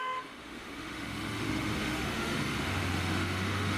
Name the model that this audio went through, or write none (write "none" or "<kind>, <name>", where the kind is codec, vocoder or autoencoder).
autoencoder, DAC-VAE